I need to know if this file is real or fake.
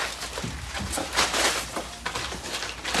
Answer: real